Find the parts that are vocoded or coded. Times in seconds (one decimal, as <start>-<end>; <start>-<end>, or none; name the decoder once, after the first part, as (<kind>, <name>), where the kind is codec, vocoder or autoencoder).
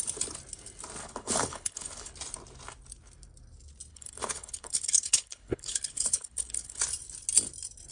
1.0-2.1 (codec, HILCodec); 3.9-6.8